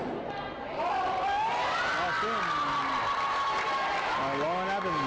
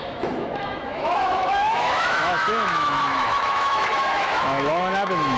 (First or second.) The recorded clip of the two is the first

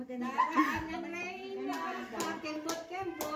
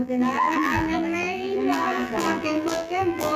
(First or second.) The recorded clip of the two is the first